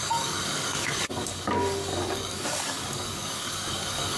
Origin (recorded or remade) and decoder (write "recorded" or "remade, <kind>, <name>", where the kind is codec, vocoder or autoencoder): remade, codec, DAC